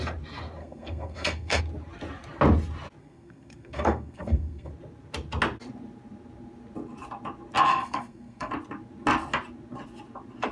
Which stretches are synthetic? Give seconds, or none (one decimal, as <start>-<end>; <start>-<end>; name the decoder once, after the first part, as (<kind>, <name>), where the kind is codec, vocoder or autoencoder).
0.6-1.6 (codec, SNAC); 3.0-4.7; 7.7-8.5